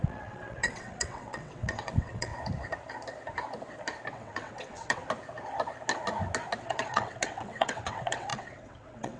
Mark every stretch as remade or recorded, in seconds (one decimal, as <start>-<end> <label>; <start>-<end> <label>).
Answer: 0.0-2.3 remade; 2.3-4.1 recorded; 4.1-5.0 remade; 5.0-6.6 recorded; 6.6-9.2 remade